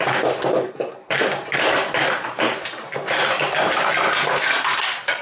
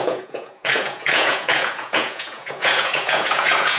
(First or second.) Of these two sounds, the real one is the first